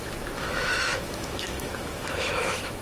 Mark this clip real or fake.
fake